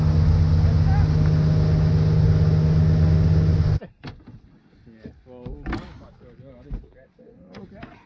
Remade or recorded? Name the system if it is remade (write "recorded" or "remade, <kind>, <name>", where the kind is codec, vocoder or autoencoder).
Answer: recorded